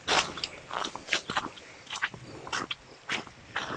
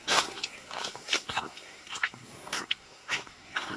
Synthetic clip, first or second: second